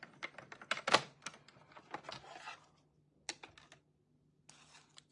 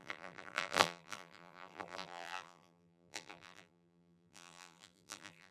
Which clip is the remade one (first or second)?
second